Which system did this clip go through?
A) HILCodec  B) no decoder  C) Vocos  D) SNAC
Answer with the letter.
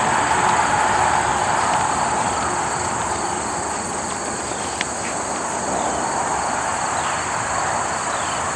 B